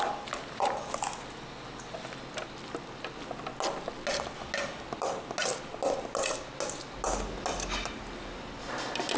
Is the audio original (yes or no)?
yes